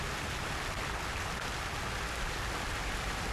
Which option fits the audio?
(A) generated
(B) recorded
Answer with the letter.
B